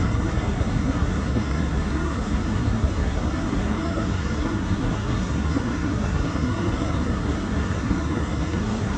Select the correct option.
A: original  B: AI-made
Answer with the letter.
B